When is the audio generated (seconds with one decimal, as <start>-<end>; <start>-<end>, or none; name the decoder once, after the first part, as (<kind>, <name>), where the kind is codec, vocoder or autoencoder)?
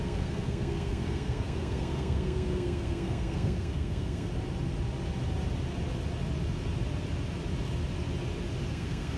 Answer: 0.0-4.3 (codec, SNAC); 8.7-9.2